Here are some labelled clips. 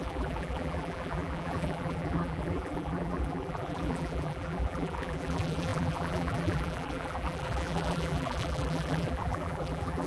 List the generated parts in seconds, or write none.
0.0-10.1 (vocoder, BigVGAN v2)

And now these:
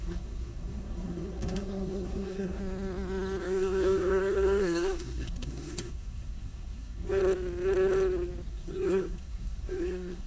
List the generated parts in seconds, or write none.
0.0-2.6 (codec, SNAC); 3.4-7.2; 8.5-10.3

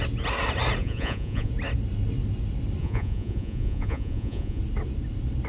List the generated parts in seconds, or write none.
0.8-1.5 (vocoder, Vocos); 2.8-4.6

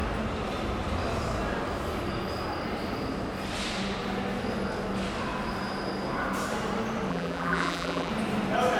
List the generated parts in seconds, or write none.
7.1-8.1 (vocoder, BigVGAN v2)

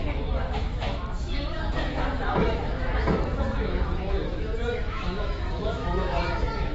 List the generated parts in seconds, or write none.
0.0-6.7 (autoencoder, DAC-VAE)